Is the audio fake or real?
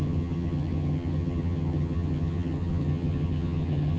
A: fake